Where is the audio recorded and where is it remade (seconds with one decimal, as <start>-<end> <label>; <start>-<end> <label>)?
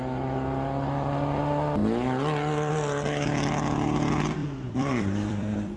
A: 0.0-4.4 recorded; 4.4-5.8 remade